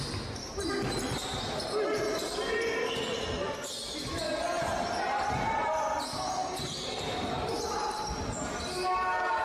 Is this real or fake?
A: real